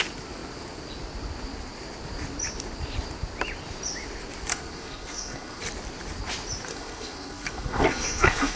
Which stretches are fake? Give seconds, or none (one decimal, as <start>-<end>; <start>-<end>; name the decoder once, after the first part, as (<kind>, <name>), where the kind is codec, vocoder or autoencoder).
4.5-5.6 (codec, SNAC); 6.7-8.6

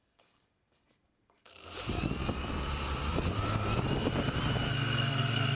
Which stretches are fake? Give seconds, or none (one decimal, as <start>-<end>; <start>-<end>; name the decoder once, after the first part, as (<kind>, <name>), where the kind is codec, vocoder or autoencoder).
0.0-1.5 (codec, SNAC); 4.7-5.5

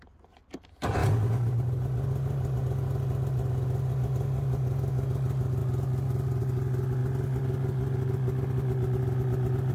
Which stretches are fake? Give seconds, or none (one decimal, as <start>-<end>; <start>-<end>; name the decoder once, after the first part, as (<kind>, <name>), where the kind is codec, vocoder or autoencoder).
none

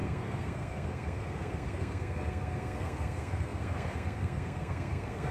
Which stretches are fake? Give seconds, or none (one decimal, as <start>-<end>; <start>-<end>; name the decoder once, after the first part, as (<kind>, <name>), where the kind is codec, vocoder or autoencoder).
0.0-5.3 (codec, SNAC)